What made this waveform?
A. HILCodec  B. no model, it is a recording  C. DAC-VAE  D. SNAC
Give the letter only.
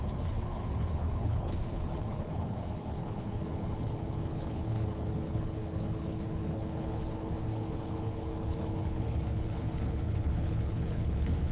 A